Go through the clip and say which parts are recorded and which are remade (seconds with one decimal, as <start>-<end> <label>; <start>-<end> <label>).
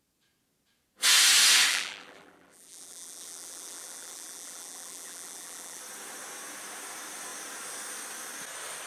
0.0-1.7 recorded; 1.7-5.8 remade; 5.8-8.9 recorded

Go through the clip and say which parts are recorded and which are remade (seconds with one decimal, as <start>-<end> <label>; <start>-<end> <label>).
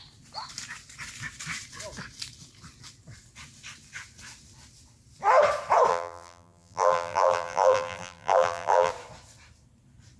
0.0-5.9 recorded; 5.9-8.9 remade; 8.9-10.2 recorded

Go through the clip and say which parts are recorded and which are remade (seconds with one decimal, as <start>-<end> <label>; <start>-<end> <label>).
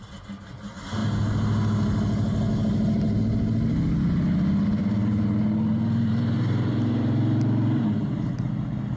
0.0-4.8 recorded; 4.8-8.4 remade; 8.4-9.0 recorded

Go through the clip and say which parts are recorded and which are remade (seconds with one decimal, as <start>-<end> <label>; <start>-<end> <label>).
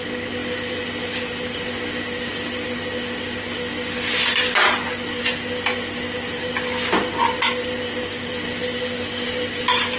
0.0-10.0 recorded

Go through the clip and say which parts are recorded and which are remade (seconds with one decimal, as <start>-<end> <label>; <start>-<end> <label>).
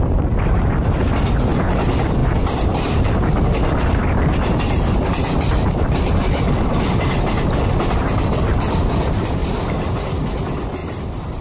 0.0-9.4 recorded; 9.4-10.1 remade; 10.1-10.8 recorded; 10.8-11.4 remade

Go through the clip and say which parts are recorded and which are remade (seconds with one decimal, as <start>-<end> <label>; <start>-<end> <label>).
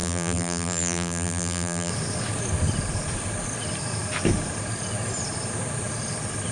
0.0-1.9 remade; 1.9-6.5 recorded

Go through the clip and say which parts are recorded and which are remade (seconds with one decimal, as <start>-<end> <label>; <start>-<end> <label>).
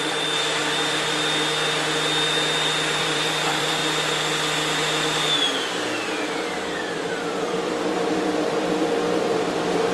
0.0-0.6 remade; 0.6-3.0 recorded; 3.0-3.8 remade; 3.8-6.1 recorded; 6.1-9.9 remade